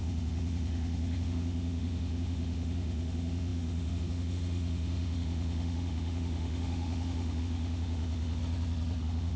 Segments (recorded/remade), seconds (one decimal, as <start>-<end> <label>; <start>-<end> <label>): 0.0-8.4 remade; 8.4-9.0 recorded; 9.0-9.4 remade